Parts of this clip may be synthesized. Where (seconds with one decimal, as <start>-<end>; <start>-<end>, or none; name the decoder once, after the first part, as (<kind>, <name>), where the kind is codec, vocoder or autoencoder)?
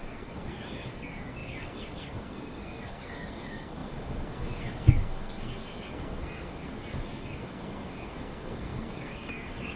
0.0-9.8 (codec, SNAC)